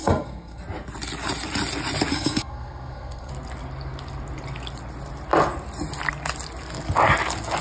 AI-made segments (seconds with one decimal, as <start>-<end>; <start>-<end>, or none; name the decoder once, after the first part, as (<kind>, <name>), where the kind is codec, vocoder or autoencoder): 0.0-0.6 (codec, SNAC); 2.1-3.3